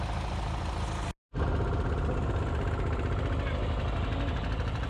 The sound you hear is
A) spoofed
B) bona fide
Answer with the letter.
B